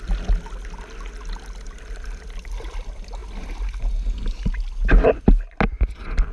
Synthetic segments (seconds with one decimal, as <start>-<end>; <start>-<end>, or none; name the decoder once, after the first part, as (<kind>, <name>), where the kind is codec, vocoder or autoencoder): none